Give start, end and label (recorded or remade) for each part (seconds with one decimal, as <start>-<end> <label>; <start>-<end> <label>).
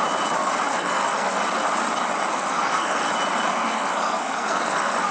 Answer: 0.0-0.7 recorded; 0.7-1.4 remade; 1.4-2.3 recorded; 2.3-3.1 remade; 3.1-3.5 recorded; 3.5-5.1 remade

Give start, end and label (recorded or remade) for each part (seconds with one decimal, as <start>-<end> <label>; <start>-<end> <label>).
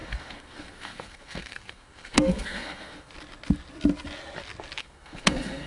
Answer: 0.0-3.1 remade; 3.1-4.8 recorded; 4.8-5.7 remade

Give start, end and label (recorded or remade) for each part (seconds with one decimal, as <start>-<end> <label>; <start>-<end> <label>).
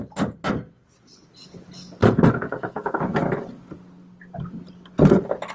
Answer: 0.0-2.0 recorded; 2.0-3.0 remade; 3.0-5.5 recorded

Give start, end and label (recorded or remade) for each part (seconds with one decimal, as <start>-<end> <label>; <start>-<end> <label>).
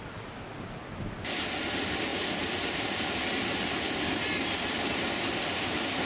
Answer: 0.0-6.1 recorded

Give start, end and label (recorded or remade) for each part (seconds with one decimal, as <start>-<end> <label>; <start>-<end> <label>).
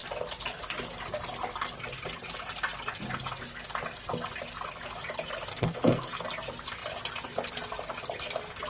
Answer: 0.0-5.5 recorded; 5.5-6.2 remade; 6.2-8.7 recorded